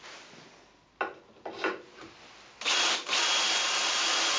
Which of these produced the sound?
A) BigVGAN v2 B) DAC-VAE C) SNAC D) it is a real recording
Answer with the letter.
D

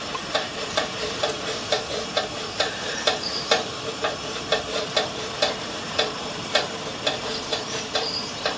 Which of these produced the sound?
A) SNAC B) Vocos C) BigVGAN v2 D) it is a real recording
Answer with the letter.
C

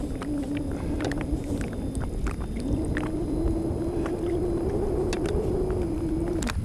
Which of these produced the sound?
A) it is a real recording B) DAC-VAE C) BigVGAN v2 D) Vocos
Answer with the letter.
A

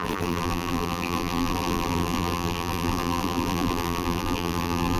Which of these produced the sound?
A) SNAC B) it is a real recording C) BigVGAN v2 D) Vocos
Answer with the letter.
C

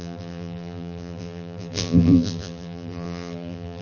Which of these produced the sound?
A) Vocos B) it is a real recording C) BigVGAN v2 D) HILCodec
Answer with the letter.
C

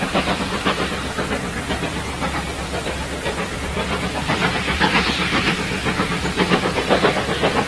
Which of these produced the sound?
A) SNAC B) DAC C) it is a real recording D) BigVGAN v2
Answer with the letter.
D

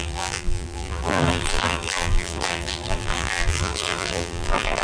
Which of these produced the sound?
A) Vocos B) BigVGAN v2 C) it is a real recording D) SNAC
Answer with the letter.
B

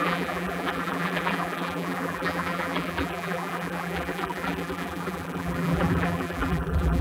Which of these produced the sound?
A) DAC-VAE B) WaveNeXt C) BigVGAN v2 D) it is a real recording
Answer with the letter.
C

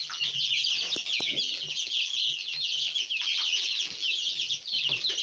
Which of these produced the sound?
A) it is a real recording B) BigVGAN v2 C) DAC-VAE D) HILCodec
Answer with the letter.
B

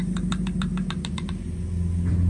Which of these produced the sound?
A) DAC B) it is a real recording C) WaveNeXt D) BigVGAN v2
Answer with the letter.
B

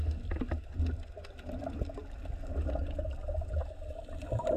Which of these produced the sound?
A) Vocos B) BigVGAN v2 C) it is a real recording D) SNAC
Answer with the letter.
B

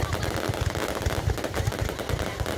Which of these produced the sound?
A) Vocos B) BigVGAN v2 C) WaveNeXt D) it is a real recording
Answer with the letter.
D